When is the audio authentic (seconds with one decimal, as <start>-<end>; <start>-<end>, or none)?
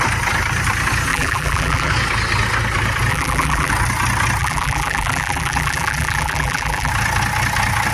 0.0-1.1; 1.9-3.1; 3.7-4.4; 6.9-7.9